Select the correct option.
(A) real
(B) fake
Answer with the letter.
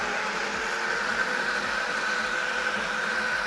A